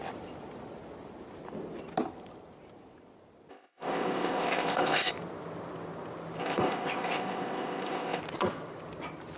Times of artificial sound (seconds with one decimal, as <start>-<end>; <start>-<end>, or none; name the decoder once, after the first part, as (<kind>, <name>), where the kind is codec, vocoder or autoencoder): 3.5-5.1 (codec, ZipCodec); 6.4-8.2

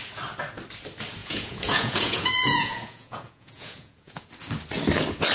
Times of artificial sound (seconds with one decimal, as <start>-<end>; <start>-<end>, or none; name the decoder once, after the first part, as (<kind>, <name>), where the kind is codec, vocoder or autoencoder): 1.2-4.3 (vocoder, Vocos)